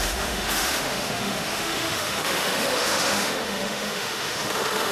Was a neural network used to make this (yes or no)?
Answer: yes